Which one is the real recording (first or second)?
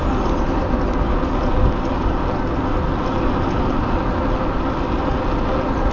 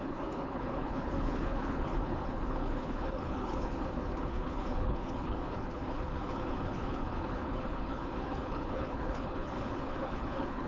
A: first